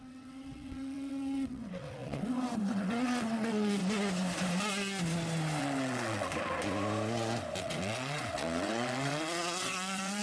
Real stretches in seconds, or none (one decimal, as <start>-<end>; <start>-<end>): 3.8-5.6; 6.3-7.6